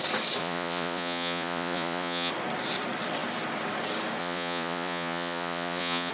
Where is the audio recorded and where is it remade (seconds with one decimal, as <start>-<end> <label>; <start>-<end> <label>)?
0.0-0.4 recorded; 0.4-2.3 remade; 2.3-4.2 recorded; 4.2-6.1 remade